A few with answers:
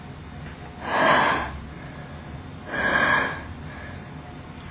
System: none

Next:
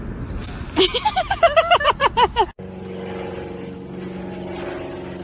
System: none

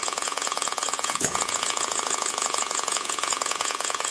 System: vocoder, Vocos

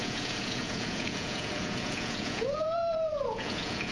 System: vocoder, Vocos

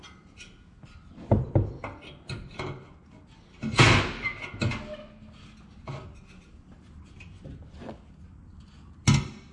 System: none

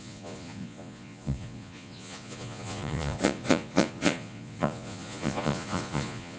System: vocoder, Vocos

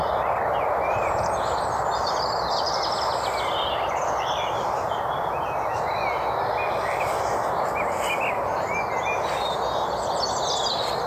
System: none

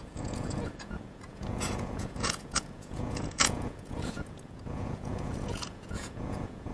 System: vocoder, Vocos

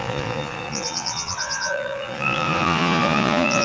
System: vocoder, Vocos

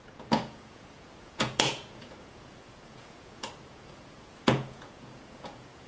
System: vocoder, Vocos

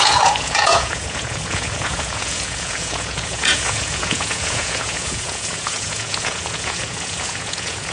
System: vocoder, Vocos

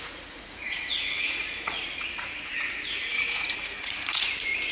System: vocoder, Vocos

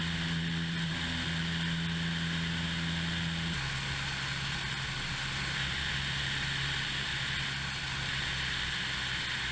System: none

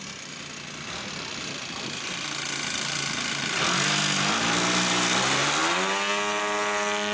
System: none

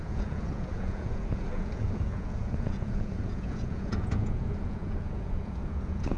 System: vocoder, Vocos